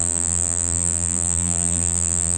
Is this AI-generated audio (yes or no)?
yes